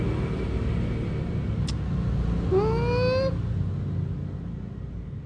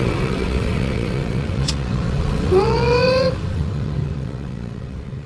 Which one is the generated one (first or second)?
second